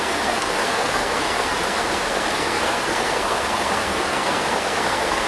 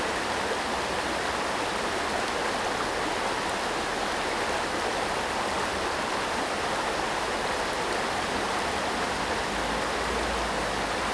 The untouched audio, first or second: second